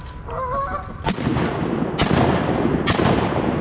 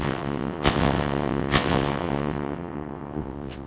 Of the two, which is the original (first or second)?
first